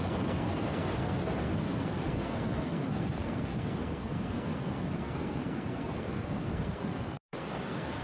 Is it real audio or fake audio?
fake